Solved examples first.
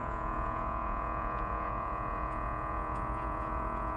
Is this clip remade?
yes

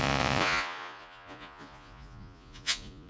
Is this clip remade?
yes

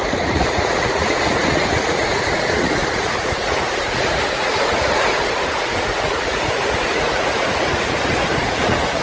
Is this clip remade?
yes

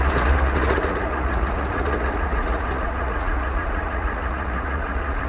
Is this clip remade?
yes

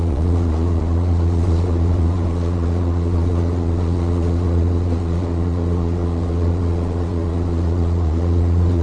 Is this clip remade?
yes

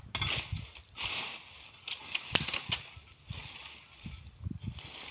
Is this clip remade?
no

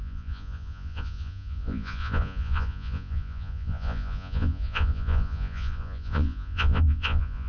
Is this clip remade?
yes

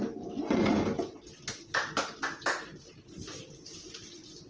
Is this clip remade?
no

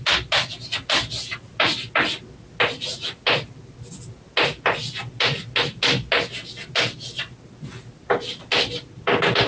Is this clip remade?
no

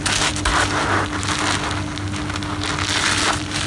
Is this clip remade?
no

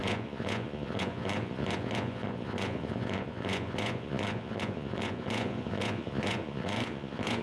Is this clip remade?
yes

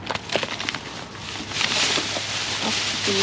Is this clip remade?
no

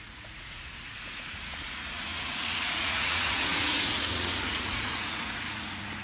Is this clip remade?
yes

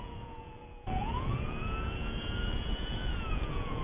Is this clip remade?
yes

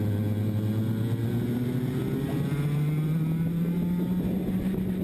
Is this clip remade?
no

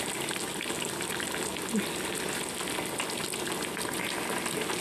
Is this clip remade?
no